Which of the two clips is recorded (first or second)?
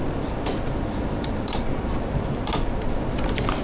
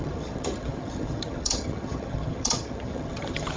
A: first